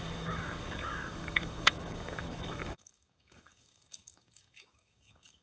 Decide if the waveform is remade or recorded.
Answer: remade